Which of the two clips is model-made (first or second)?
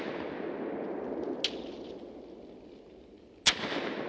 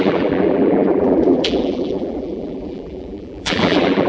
second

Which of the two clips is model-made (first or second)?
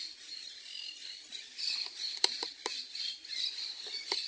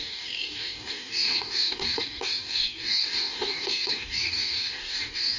second